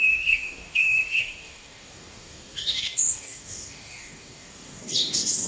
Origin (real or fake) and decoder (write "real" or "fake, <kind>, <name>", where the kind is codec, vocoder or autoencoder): fake, codec, DAC